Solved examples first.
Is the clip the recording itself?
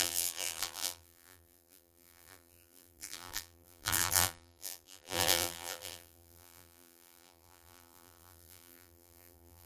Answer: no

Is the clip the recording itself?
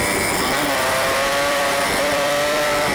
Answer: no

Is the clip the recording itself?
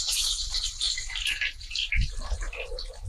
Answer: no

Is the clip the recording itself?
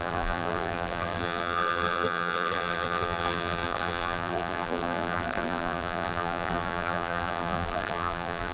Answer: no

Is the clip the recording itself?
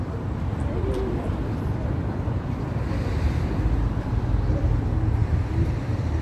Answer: no